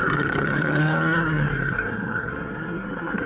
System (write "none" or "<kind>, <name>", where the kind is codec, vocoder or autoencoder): codec, SNAC